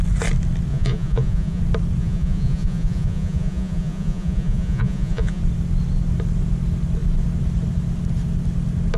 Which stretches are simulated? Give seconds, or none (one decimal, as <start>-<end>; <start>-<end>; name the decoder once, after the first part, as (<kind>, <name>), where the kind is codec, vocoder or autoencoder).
0.7-1.6 (vocoder, Vocos); 2.0-5.4